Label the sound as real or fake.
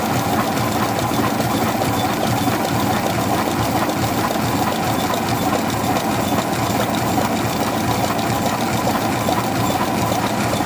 real